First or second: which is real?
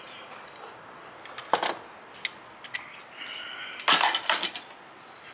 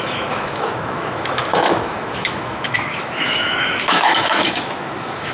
first